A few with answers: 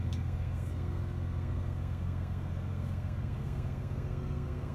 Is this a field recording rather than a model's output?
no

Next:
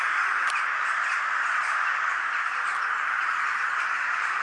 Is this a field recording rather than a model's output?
no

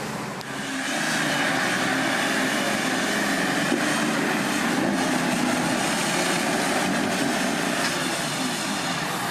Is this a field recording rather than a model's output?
yes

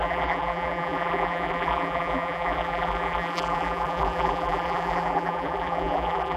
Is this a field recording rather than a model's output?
no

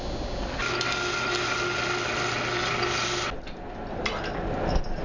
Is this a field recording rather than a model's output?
yes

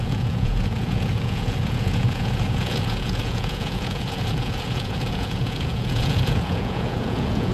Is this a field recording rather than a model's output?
no